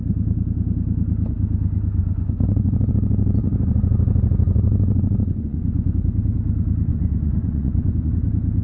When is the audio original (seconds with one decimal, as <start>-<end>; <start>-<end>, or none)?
0.0-2.0; 2.9-3.4; 5.9-6.9; 8.1-8.6